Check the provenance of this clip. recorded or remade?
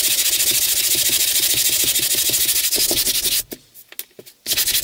recorded